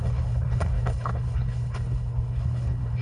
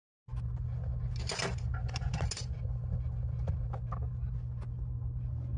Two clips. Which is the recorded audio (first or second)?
second